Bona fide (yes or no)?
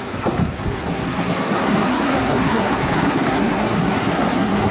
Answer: no